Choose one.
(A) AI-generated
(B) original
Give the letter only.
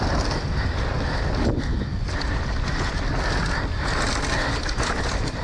B